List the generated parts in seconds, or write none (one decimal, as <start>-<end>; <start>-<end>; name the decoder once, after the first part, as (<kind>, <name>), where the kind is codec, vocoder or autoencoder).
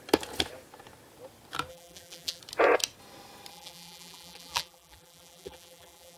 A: 1.7-2.4 (vocoder, BigVGAN v2); 3.5-6.2